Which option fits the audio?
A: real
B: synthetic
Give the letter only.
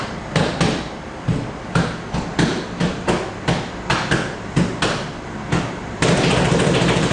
B